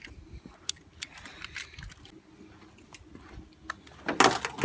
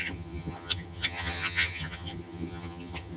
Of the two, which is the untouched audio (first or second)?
first